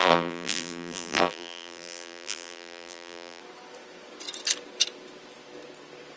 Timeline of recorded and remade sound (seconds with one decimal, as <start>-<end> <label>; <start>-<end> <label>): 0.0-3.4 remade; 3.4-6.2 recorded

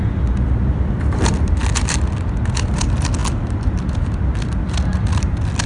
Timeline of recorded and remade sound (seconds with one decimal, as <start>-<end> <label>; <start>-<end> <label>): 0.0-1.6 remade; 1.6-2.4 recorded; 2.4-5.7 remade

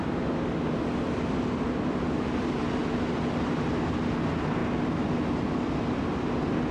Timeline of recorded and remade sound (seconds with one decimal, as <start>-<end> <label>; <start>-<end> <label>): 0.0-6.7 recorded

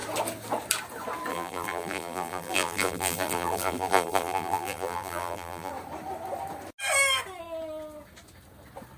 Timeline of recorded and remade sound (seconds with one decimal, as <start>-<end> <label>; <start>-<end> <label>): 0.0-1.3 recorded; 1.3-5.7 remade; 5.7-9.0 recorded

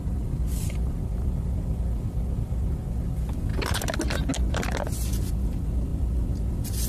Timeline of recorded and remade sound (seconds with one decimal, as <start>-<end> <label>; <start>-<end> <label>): 0.0-3.5 remade; 3.5-5.2 recorded; 5.2-5.9 remade; 5.9-6.5 recorded; 6.5-6.9 remade

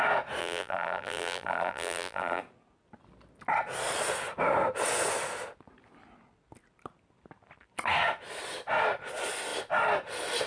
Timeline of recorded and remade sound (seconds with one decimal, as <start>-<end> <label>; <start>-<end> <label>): 0.0-0.4 recorded; 0.4-2.4 remade; 2.4-10.5 recorded

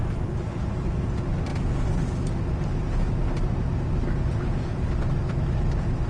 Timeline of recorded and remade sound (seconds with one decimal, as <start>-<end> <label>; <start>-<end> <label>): 0.0-6.1 recorded